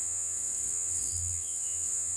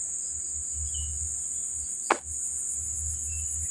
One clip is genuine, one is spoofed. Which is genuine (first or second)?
second